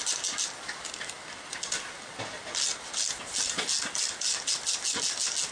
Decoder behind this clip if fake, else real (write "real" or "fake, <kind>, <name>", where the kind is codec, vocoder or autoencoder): real